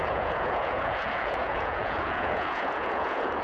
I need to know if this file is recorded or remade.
remade